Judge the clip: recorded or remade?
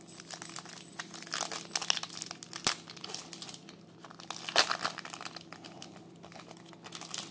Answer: recorded